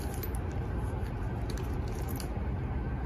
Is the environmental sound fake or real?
real